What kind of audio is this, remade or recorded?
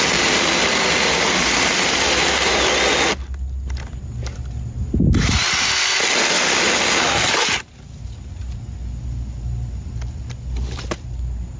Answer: recorded